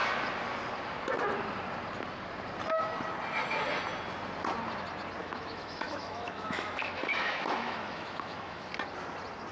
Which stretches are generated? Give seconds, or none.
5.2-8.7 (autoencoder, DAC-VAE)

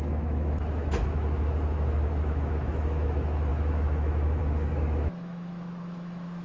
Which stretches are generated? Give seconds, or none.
0.0-6.4 (autoencoder, DAC-VAE)

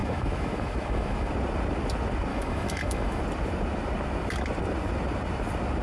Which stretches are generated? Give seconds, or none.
0.0-1.3 (autoencoder, DAC-VAE); 2.3-3.2

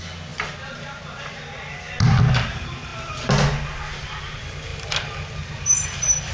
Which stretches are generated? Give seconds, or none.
none

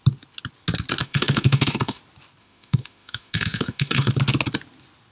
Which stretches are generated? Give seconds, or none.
1.0-2.0 (autoencoder, DAC-VAE); 2.4-4.1

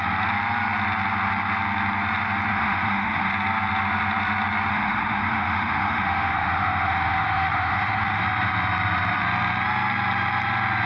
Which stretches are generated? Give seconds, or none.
2.5-3.3 (autoencoder, DAC-VAE); 4.7-8.2

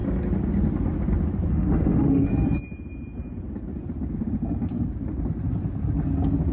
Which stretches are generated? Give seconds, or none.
1.5-2.3 (autoencoder, DAC-VAE)

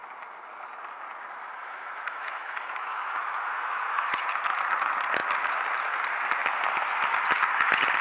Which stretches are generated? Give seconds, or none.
1.6-4.1 (autoencoder, DAC-VAE)